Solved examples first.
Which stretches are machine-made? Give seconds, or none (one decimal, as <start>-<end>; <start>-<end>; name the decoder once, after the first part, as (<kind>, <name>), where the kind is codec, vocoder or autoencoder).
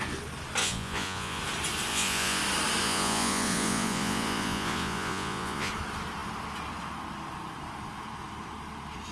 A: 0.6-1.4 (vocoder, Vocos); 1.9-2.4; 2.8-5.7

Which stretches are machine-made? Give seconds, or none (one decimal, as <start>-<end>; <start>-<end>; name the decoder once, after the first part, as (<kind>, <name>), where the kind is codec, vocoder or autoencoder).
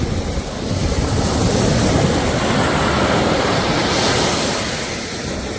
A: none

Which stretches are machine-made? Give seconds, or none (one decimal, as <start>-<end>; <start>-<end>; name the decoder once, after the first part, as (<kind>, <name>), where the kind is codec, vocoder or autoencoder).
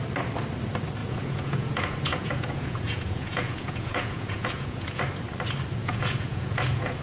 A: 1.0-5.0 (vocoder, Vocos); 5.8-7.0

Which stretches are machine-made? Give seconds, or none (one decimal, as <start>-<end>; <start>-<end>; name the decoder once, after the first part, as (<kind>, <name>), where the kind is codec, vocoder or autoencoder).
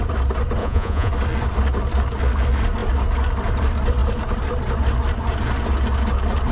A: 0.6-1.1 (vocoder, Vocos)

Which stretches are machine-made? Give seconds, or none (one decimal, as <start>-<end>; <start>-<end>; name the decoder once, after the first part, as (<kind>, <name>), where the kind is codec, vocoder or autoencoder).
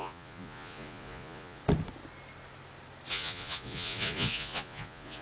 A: 0.0-1.6 (vocoder, Vocos); 3.1-5.2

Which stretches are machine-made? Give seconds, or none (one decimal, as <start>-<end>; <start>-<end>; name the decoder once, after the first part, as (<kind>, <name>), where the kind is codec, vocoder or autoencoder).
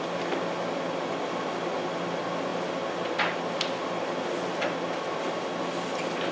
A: none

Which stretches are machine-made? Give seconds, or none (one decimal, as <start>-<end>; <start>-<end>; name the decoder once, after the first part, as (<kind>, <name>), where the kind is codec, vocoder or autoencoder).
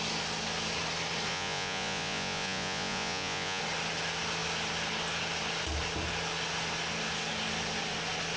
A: 1.3-3.6 (vocoder, Vocos)